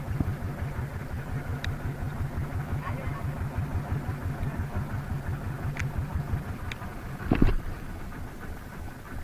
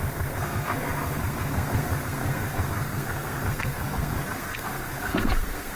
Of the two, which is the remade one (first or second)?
second